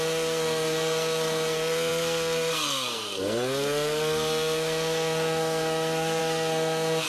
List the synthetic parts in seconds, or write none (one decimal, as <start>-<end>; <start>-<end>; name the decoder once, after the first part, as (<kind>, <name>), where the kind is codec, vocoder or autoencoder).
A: 0.0-7.1 (codec, SNAC)